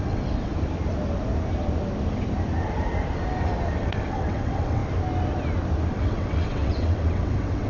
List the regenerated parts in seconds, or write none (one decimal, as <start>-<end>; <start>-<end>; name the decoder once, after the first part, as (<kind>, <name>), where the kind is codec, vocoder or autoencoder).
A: 0.0-0.5 (vocoder, WaveNeXt); 3.8-4.8; 5.9-7.7